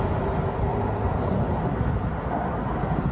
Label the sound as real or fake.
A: real